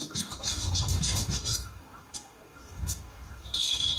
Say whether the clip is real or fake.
fake